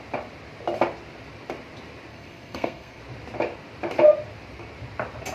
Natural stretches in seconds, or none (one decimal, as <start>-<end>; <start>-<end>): 0.0-2.1; 3.0-5.3